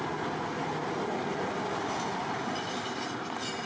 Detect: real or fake real